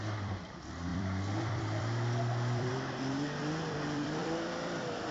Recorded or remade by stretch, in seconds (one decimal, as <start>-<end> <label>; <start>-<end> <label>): 0.0-5.1 remade